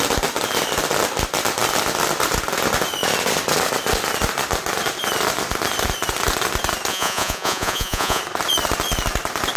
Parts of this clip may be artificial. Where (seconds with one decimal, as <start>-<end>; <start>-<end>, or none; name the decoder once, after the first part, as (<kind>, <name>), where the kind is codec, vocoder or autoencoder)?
6.9-8.2 (vocoder, Vocos)